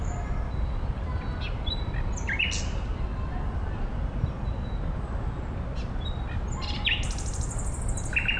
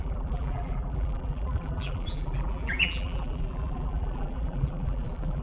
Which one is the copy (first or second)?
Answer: second